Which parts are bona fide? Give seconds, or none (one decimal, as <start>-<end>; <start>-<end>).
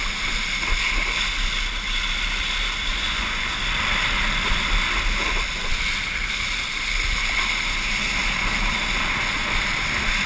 0.0-2.9; 3.6-10.3